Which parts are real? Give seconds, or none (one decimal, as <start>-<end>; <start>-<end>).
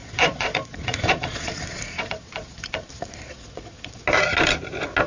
4.0-5.1